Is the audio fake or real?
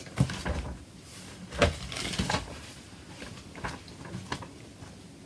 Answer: real